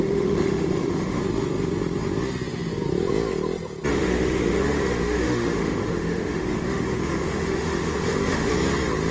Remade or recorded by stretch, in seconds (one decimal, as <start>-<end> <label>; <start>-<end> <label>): 0.0-1.2 remade; 1.2-3.9 recorded; 3.9-8.5 remade; 8.5-9.1 recorded